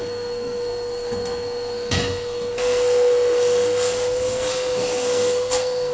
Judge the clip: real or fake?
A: fake